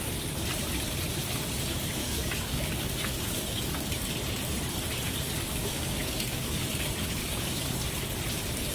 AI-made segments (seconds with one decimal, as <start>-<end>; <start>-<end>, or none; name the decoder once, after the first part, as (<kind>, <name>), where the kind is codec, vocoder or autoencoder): 2.0-3.9 (codec, DAC); 5.6-6.6; 7.2-7.8